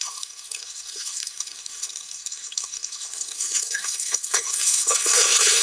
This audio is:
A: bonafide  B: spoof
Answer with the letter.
B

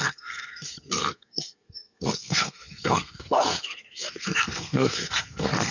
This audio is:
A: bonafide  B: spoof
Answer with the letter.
B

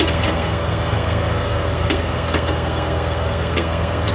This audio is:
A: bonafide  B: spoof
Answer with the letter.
B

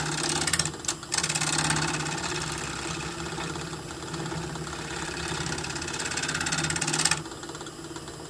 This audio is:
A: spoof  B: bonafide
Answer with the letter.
B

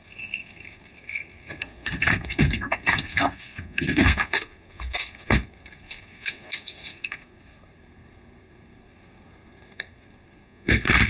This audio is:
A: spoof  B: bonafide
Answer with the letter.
A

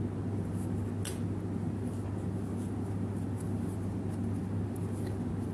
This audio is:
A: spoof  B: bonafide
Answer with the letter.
B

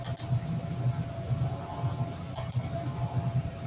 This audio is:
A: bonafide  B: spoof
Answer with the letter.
A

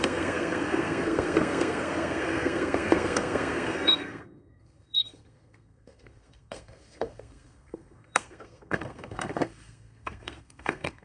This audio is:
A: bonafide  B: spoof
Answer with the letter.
B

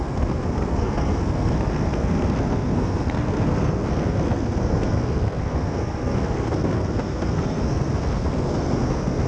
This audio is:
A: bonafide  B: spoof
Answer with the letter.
B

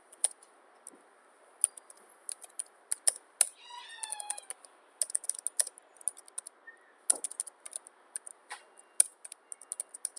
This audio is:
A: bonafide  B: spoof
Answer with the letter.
A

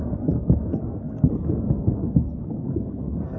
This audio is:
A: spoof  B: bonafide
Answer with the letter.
A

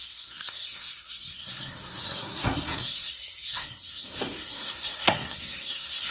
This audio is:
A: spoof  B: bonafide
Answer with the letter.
A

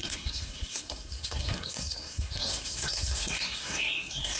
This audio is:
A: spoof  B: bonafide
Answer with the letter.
A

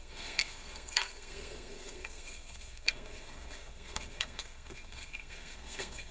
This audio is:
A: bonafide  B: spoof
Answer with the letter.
B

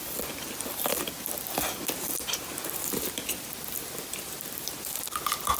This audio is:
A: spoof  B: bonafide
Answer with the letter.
B